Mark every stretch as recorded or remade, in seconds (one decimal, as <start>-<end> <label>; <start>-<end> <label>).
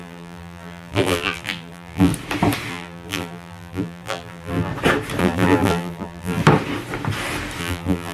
0.0-2.1 remade; 2.1-2.7 recorded; 2.7-4.7 remade; 4.7-5.2 recorded; 5.2-6.4 remade; 6.4-7.6 recorded; 7.6-8.1 remade